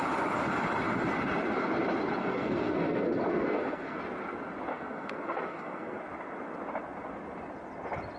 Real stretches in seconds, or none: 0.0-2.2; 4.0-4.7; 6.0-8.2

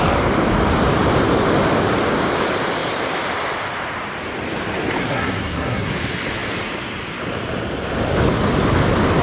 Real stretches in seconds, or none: 0.0-5.0; 5.9-9.2

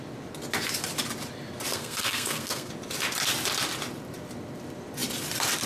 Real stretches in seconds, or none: 0.0-1.7; 2.7-5.7